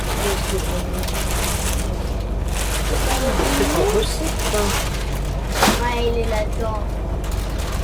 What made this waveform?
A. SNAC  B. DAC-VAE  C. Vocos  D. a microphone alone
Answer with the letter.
D